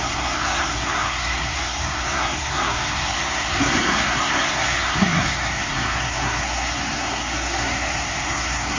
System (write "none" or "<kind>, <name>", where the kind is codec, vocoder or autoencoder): codec, SNAC